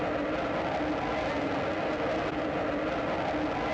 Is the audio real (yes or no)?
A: yes